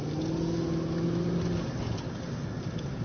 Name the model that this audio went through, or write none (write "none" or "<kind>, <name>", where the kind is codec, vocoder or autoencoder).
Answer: none